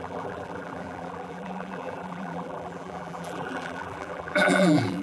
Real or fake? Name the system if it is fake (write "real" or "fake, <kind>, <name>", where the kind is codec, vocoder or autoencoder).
fake, vocoder, BigVGAN v2